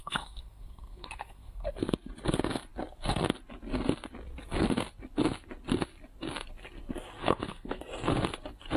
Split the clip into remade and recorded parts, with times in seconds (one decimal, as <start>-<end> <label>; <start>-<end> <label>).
0.0-1.8 remade; 1.8-7.2 recorded; 7.2-7.8 remade; 7.8-8.8 recorded